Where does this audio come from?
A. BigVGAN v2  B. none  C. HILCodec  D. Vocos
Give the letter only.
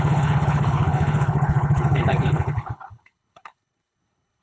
C